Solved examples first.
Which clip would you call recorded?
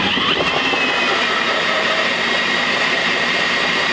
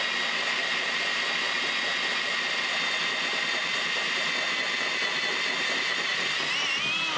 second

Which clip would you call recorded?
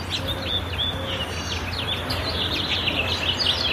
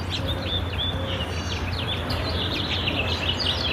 first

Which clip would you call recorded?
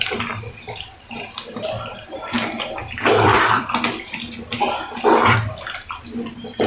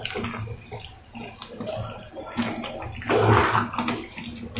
second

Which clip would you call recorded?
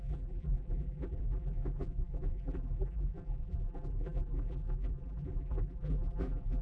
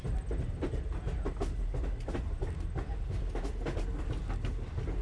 second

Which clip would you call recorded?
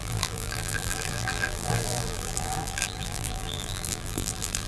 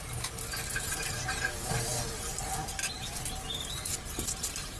second